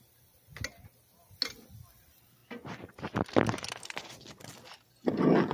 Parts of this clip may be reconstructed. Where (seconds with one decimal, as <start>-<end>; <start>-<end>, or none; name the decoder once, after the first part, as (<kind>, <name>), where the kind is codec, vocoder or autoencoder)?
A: none